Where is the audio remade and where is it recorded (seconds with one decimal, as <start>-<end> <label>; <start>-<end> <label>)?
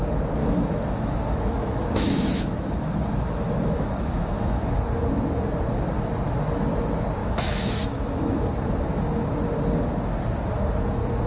0.0-0.4 recorded; 0.4-4.7 remade; 4.7-7.2 recorded; 7.2-8.5 remade; 8.5-11.3 recorded